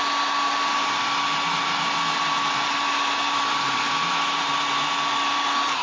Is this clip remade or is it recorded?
recorded